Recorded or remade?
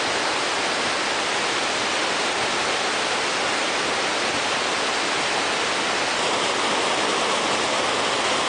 remade